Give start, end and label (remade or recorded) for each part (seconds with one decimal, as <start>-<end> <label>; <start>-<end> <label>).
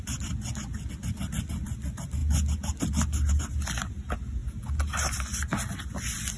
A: 0.0-6.4 recorded